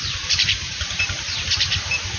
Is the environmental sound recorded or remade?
recorded